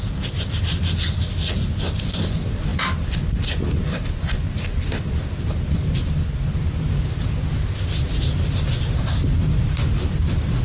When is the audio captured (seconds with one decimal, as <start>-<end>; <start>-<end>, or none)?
0.0-10.6